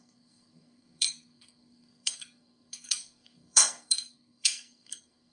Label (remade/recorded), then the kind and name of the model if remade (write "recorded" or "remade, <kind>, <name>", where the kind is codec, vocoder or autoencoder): remade, codec, SNAC